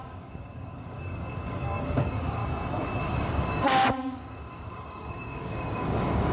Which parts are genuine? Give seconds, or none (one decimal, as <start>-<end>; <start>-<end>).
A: 2.4-3.0